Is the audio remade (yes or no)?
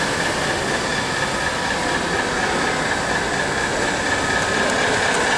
no